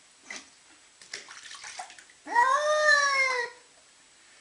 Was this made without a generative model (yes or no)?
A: yes